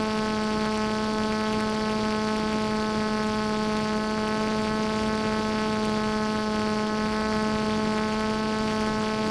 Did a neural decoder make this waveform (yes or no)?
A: no